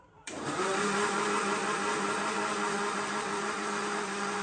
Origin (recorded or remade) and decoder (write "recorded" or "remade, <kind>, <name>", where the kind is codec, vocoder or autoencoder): remade, vocoder, BigVGAN v2